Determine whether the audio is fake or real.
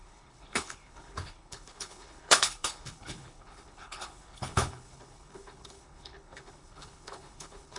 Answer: fake